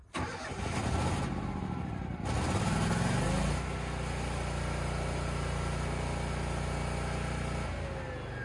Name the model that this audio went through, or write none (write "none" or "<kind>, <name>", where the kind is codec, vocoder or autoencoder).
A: none